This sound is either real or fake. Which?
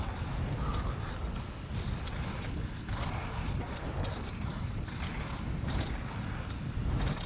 real